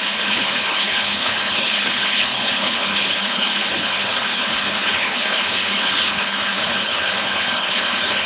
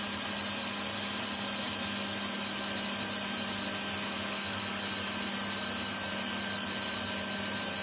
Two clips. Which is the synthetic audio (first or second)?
first